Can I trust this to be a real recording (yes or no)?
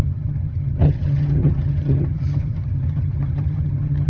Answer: no